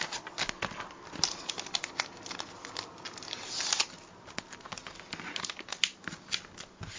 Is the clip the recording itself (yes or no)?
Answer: yes